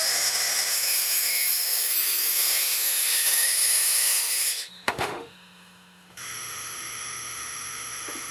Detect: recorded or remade remade